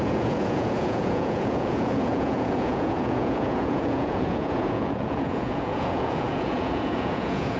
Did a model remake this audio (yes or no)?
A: yes